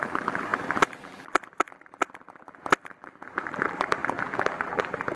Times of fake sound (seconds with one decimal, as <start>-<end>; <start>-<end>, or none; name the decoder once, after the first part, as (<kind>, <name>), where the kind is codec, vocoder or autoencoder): 0.0-5.2 (vocoder, BigVGAN v2)